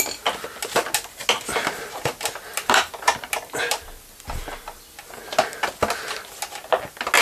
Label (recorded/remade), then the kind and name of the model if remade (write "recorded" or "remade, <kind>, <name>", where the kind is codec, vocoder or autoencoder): recorded